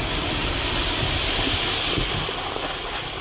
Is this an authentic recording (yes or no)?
yes